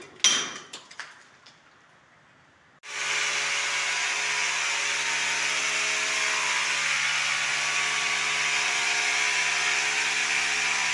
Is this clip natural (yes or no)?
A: yes